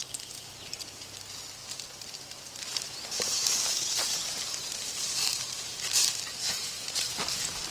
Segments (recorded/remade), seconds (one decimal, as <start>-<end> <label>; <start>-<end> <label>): 0.0-1.6 recorded; 1.6-6.1 remade; 6.1-6.6 recorded; 6.6-7.7 remade